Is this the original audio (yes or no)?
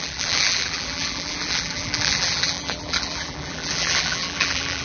no